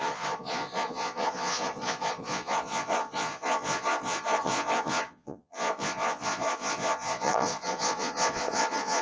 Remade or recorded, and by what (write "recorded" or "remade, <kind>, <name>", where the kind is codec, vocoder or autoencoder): remade, vocoder, Vocos